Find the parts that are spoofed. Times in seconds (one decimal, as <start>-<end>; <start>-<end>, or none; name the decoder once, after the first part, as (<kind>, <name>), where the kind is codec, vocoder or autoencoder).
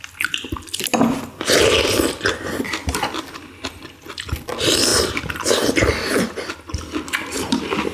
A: none